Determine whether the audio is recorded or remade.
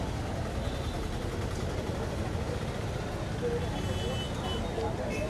recorded